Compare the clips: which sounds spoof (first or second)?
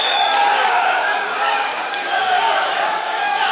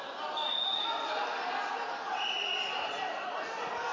first